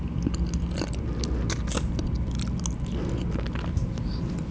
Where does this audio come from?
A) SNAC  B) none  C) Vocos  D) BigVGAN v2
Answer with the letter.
B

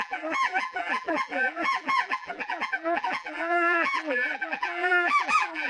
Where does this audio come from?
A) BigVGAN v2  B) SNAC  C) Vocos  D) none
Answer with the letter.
A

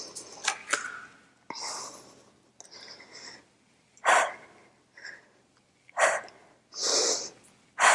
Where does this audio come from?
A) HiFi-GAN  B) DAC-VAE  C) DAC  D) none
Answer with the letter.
D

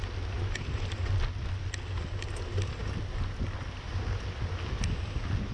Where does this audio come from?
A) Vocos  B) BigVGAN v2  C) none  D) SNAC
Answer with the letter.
C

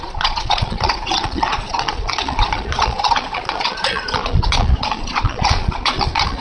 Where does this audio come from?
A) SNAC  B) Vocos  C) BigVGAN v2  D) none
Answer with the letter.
B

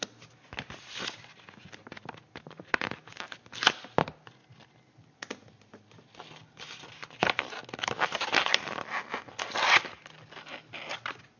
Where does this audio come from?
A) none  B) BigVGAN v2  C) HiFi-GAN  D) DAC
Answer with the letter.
A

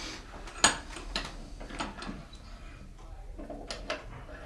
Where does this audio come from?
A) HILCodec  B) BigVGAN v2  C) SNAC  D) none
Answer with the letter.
D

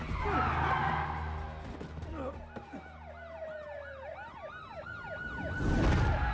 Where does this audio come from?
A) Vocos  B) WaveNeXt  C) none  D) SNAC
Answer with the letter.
C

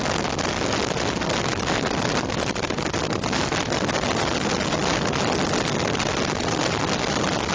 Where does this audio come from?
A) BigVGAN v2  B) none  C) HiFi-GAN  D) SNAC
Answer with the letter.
B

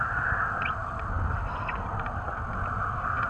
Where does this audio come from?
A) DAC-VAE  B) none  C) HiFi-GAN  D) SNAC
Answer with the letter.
B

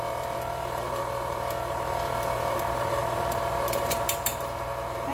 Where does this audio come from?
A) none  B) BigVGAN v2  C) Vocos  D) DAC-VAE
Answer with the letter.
B